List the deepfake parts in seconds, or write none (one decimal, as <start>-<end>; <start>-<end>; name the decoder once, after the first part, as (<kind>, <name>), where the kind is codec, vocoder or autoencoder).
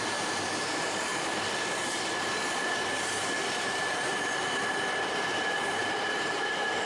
0.0-1.1 (vocoder, BigVGAN v2); 2.4-4.1; 5.1-6.9